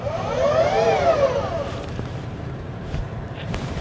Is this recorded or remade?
remade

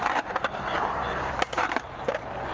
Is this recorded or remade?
remade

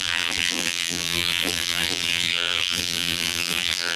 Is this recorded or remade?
remade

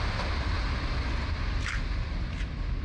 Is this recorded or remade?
recorded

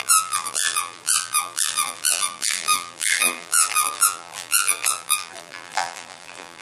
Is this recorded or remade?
remade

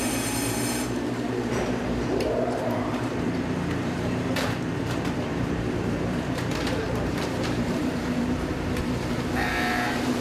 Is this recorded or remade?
remade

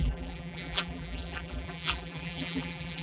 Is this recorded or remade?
remade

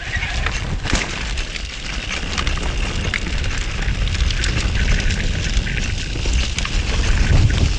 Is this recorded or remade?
recorded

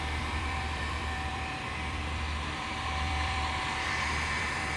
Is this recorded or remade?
remade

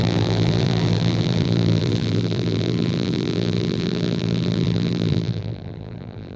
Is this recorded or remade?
remade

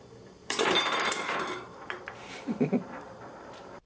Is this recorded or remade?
remade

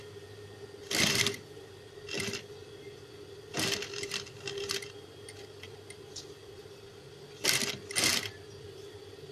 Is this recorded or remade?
recorded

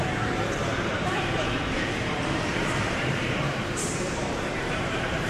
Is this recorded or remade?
remade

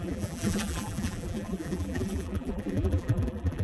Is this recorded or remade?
remade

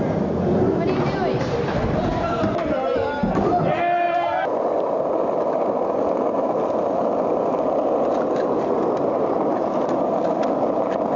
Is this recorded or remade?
recorded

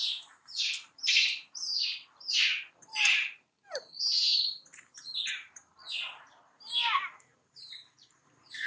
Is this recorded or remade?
remade